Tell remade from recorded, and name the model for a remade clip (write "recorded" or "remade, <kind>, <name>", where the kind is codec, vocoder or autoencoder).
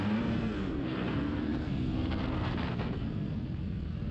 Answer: remade, codec, SNAC